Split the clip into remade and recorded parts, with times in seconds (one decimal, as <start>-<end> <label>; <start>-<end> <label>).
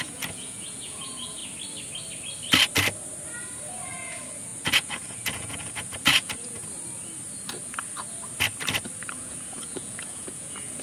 0.0-1.4 remade; 1.4-3.9 recorded; 3.9-6.6 remade; 6.6-9.1 recorded; 9.1-10.8 remade